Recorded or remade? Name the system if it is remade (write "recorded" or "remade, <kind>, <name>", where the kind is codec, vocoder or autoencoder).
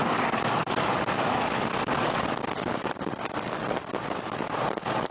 recorded